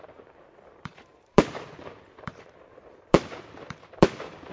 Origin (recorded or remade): remade